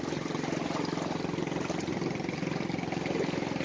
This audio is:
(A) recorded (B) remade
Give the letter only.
A